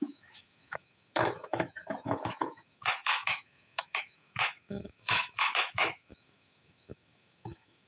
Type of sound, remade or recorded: remade